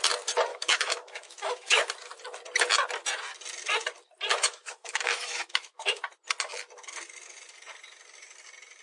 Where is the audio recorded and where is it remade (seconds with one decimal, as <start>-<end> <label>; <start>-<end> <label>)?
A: 0.0-0.5 recorded; 0.5-1.9 remade; 1.9-4.3 recorded; 4.3-6.0 remade; 6.0-8.8 recorded